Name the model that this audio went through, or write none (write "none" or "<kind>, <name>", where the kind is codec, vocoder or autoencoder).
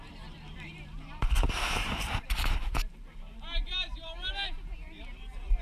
vocoder, BigVGAN v2